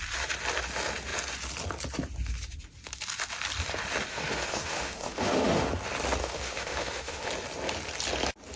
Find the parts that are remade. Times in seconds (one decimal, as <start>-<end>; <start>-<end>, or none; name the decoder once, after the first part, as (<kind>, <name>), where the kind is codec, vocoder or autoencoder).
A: 4.1-5.7 (autoencoder, DAC-VAE); 6.2-7.3